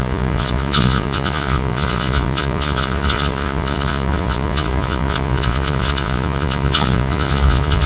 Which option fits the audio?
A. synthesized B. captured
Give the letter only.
A